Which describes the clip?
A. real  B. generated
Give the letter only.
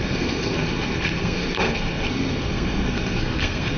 B